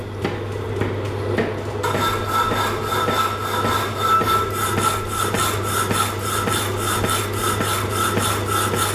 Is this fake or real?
real